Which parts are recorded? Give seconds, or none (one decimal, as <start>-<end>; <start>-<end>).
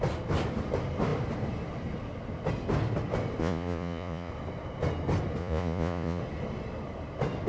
0.0-3.4; 4.3-5.4; 6.2-7.5